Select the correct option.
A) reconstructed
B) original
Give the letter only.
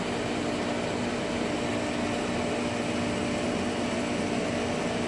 B